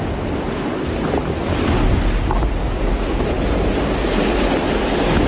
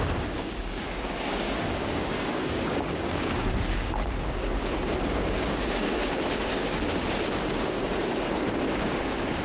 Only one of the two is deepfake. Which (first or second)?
second